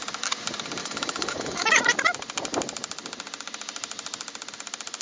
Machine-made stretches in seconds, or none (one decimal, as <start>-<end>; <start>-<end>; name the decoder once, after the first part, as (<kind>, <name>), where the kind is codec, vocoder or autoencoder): 0.8-1.8 (autoencoder, DAC-VAE)